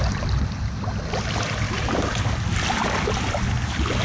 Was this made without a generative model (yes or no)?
yes